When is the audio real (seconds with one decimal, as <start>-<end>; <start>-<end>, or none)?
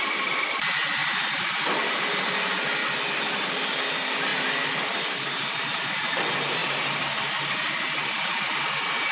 0.0-1.0; 1.5-2.8; 3.5-9.1